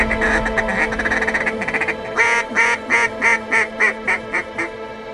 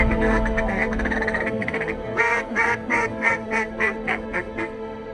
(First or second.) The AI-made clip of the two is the second